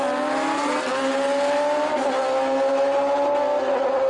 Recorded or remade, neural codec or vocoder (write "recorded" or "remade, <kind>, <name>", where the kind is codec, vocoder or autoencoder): recorded